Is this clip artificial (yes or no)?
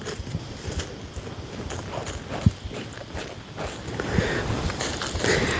no